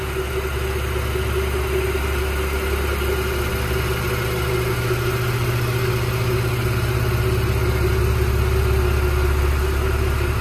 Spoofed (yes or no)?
no